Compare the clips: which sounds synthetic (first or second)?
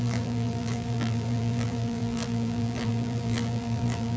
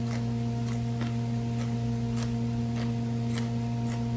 first